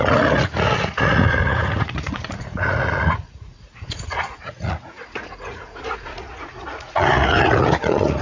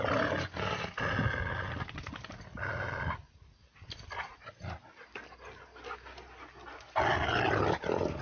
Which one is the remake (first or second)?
first